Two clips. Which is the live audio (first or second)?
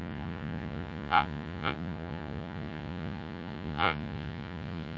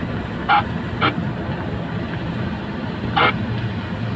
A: second